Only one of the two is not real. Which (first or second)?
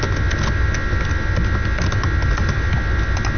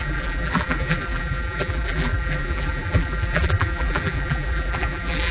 second